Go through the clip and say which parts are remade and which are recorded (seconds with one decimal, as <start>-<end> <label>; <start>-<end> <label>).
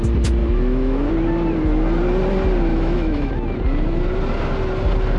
0.0-0.4 recorded; 0.4-1.1 remade; 1.1-2.7 recorded; 2.7-3.3 remade; 3.3-5.2 recorded